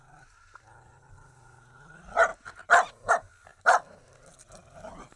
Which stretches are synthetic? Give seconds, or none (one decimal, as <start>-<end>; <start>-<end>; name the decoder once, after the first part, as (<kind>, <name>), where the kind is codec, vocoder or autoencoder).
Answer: none